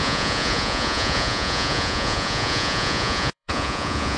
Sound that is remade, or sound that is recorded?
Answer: remade